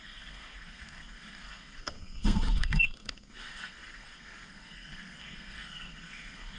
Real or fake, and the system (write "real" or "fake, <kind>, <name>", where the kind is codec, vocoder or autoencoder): fake, codec, SNAC